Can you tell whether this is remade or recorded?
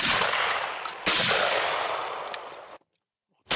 recorded